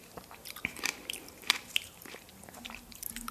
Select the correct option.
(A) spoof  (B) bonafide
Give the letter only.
A